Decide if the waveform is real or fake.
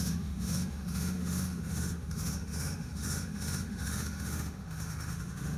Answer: fake